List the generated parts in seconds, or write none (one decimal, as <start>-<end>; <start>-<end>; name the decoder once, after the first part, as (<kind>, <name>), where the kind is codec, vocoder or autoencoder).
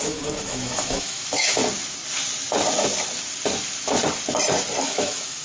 0.0-1.6 (autoencoder, DAC-VAE); 4.8-5.4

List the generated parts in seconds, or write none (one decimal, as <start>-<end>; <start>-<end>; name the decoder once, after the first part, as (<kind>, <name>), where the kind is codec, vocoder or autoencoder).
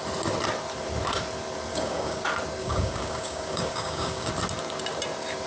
1.7-2.2 (codec, DAC); 2.6-4.3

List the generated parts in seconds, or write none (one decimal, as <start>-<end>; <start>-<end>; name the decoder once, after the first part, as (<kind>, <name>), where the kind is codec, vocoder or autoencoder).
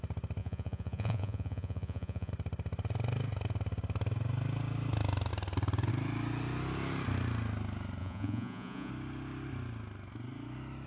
0.4-2.3 (vocoder, Vocos); 8.0-8.9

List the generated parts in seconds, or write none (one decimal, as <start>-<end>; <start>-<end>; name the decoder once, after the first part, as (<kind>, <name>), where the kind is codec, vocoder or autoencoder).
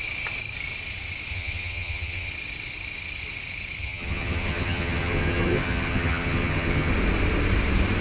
1.3-2.3 (vocoder, HiFi-GAN); 3.8-6.9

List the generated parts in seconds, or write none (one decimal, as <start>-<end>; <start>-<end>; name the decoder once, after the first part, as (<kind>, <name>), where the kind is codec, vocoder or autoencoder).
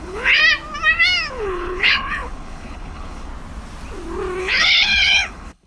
0.0-0.4 (codec, HILCodec); 1.3-3.3; 4.4-5.7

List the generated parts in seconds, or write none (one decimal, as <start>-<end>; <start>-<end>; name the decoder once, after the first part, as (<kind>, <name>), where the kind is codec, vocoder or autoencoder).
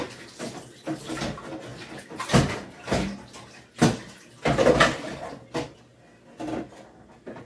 none